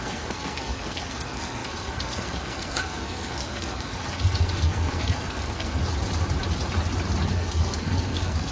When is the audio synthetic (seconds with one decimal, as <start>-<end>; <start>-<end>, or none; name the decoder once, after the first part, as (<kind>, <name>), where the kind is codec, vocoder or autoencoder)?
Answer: 0.0-5.8 (codec, SNAC); 7.3-8.5

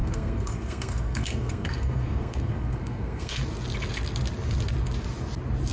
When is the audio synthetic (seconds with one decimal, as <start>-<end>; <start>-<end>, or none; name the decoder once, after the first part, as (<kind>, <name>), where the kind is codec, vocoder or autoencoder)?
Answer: 0.0-3.4 (codec, SNAC)

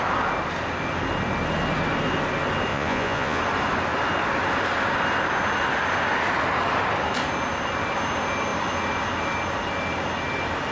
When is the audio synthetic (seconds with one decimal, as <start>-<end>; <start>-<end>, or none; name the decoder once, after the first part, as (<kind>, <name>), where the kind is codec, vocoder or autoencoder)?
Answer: 2.7-3.4 (vocoder, Vocos)

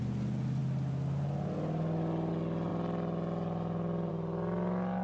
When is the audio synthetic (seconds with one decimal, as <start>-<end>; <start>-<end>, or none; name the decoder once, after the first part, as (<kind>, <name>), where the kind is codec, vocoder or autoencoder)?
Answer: none

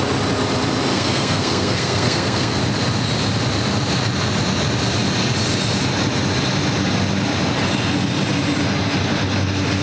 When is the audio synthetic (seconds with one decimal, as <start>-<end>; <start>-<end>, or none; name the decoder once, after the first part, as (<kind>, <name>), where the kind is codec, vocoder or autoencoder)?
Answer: 0.9-2.6 (codec, SNAC)

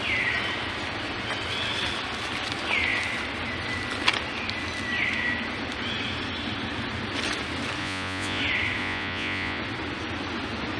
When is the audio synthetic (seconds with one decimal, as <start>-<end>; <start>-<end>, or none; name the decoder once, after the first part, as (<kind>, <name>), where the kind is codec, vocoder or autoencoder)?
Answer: 7.8-8.4 (vocoder, Vocos); 8.8-9.6

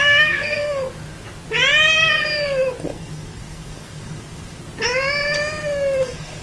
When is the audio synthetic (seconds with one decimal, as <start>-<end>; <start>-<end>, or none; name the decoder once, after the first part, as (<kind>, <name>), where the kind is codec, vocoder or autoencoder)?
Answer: 0.0-0.8 (codec, SNAC); 2.8-4.6; 6.0-6.4

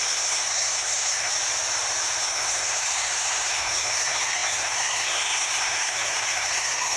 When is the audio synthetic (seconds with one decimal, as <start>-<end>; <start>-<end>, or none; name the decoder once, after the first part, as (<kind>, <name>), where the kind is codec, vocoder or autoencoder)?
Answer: 0.0-1.3 (codec, SNAC); 2.2-7.0